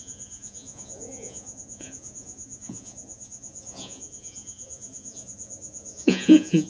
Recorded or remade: remade